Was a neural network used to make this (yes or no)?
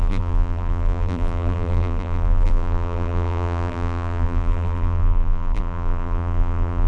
yes